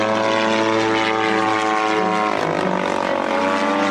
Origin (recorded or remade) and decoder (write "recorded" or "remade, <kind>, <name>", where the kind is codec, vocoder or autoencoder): recorded